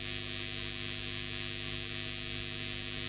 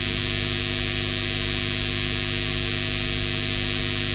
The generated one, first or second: second